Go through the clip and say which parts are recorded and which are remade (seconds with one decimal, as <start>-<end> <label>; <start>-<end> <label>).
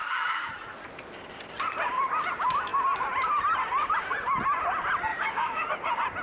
0.0-0.5 remade; 0.5-5.1 recorded; 5.1-5.7 remade; 5.7-6.2 recorded